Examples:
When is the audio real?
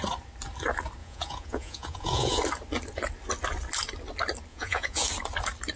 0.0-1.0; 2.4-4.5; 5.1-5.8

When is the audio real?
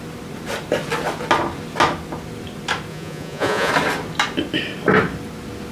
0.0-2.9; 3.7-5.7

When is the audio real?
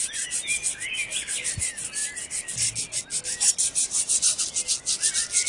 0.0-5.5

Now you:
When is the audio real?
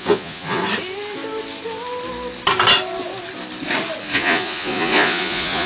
0.6-4.0